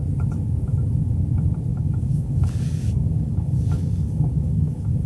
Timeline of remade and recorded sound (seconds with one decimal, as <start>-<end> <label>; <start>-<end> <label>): 0.0-1.7 recorded; 1.7-5.1 remade